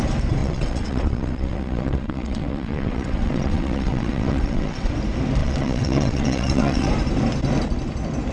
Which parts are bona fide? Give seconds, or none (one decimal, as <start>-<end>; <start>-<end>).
0.0-0.4; 4.9-5.4; 6.9-8.3